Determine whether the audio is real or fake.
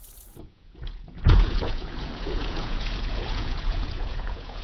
fake